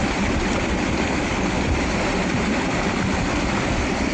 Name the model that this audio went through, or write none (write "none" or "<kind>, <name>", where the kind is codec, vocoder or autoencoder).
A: none